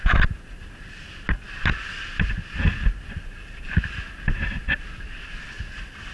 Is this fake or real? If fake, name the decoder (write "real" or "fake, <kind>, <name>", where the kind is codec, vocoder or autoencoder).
real